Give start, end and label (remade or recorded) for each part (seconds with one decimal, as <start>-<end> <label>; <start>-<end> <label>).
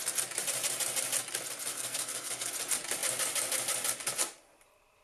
0.0-1.7 recorded; 1.7-2.5 remade; 2.5-5.0 recorded